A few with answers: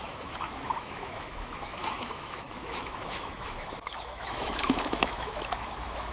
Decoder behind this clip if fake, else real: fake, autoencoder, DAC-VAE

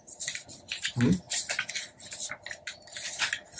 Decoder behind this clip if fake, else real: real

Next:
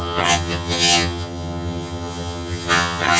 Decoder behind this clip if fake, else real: fake, vocoder, HiFi-GAN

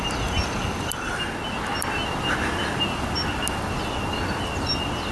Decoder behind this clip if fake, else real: real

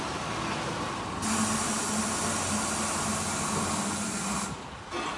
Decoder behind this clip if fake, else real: real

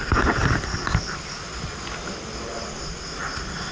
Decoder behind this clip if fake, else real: real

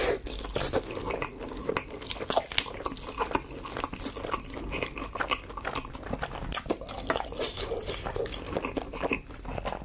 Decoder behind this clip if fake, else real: real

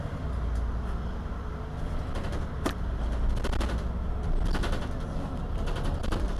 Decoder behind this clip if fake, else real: real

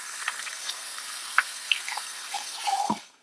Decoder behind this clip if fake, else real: fake, codec, SNAC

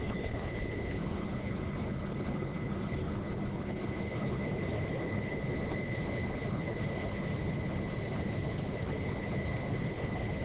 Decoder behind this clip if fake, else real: fake, codec, HILCodec